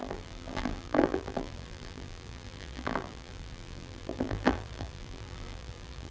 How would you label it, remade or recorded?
remade